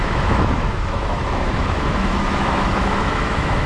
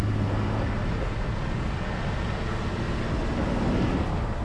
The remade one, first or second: first